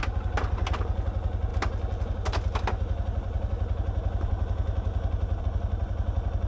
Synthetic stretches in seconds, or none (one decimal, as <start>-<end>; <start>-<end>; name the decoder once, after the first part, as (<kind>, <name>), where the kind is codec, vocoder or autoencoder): none